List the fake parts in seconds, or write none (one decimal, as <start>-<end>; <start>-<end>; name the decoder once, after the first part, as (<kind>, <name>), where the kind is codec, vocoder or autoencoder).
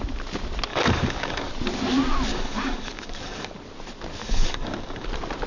0.7-1.5 (codec, DAC); 2.3-3.5; 4.2-5.1